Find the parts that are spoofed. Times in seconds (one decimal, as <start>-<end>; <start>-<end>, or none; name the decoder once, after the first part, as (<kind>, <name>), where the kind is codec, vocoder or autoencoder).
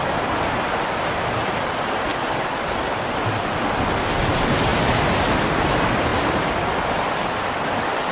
none